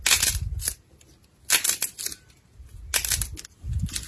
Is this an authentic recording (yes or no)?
yes